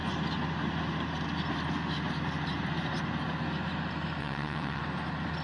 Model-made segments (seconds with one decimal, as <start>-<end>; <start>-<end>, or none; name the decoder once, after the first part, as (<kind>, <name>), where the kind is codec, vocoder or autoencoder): 4.2-4.8 (vocoder, WaveNeXt)